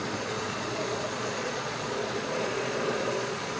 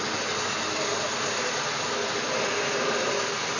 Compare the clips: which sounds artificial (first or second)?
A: first